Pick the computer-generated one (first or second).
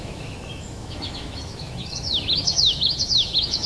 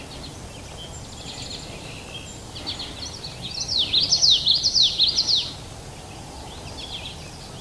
first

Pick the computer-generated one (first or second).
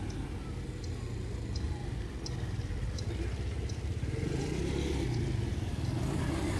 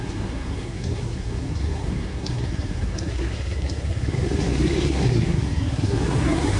second